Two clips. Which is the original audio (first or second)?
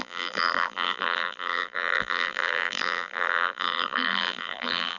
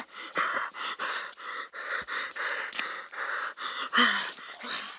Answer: second